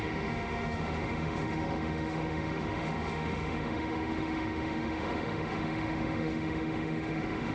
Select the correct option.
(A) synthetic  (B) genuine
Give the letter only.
A